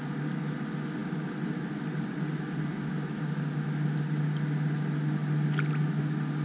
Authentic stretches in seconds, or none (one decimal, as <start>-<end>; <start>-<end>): 0.0-6.4

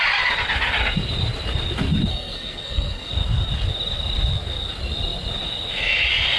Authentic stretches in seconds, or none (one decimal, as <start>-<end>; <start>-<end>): 0.0-2.1; 3.1-6.4

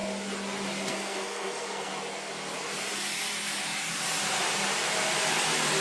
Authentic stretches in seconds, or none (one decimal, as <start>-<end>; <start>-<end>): 0.0-0.9; 1.9-5.8

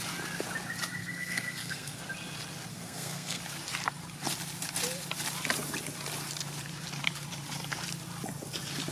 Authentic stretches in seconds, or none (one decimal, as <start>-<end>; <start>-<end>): 0.0-1.0; 2.0-2.7; 3.4-8.9

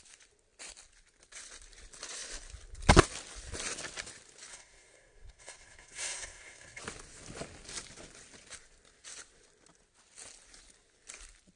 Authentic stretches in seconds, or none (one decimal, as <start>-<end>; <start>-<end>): 0.0-4.5; 6.8-11.6